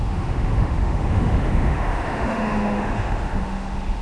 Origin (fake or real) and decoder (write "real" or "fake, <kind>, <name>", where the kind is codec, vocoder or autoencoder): fake, autoencoder, DAC-VAE